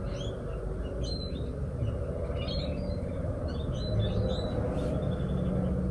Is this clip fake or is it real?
real